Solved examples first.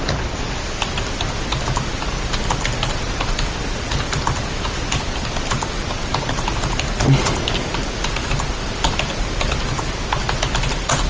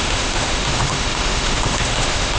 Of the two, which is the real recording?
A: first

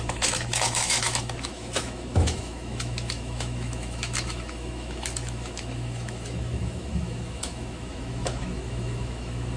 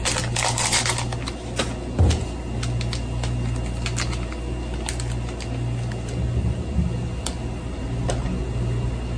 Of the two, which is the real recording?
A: second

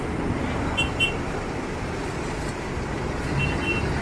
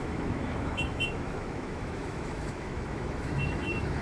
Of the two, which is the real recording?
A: first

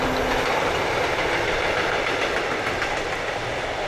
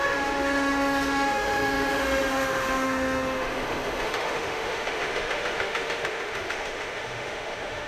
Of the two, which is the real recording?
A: first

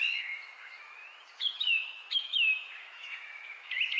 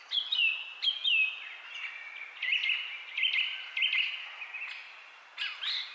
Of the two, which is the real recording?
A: second